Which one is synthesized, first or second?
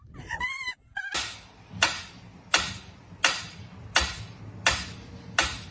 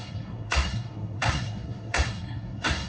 second